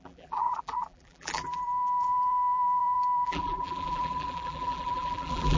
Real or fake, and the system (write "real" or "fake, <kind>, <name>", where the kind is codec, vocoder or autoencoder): fake, vocoder, BigVGAN v2